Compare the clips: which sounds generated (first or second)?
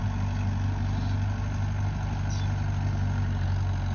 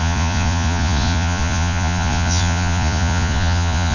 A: second